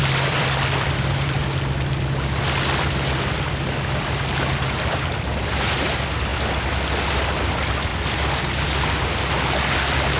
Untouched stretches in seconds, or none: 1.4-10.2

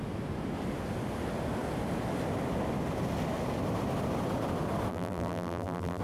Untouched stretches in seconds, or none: 0.0-4.9

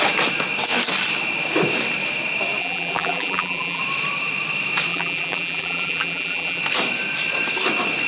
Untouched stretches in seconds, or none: 0.0-2.6; 3.8-4.9; 6.6-8.1

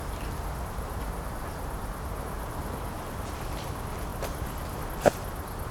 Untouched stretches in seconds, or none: 3.0-4.1; 4.8-5.7

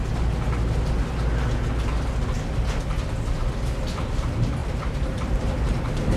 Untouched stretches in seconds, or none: 0.0-4.6

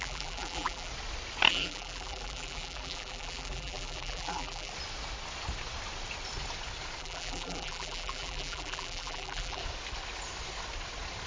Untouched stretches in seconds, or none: 0.9-1.5; 4.7-7.0; 9.6-11.3